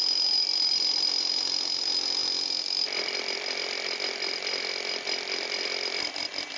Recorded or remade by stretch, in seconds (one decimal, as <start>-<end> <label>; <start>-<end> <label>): 0.0-6.6 recorded